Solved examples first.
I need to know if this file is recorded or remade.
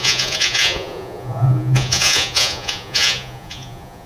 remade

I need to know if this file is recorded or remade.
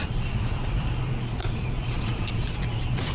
remade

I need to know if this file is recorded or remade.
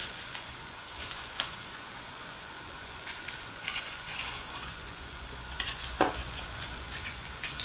remade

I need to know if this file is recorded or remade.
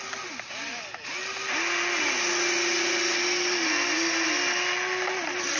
recorded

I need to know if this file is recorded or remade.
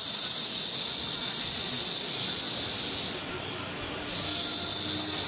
recorded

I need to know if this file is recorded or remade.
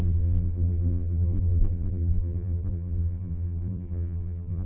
remade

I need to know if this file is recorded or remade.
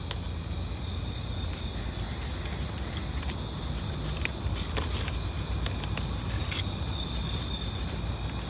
recorded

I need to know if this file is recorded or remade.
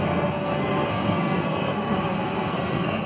remade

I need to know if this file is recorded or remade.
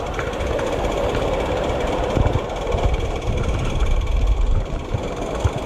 recorded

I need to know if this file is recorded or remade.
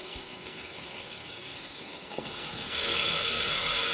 remade